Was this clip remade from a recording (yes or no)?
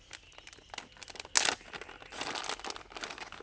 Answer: no